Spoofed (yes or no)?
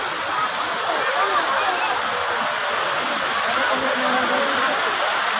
no